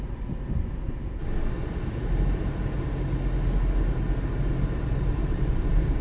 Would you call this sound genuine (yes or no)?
yes